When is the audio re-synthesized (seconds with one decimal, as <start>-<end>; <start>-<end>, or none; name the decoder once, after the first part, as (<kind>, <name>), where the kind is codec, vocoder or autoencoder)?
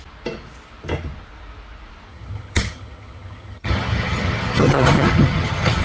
2.1-5.8 (vocoder, HiFi-GAN)